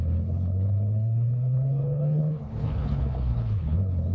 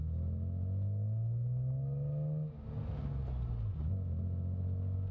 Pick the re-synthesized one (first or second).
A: first